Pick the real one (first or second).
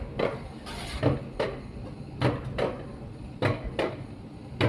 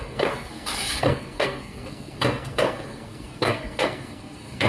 first